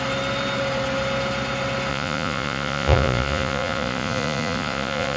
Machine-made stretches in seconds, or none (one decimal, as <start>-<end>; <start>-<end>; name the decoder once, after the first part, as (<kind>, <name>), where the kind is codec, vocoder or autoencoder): 1.9-5.2 (vocoder, Vocos)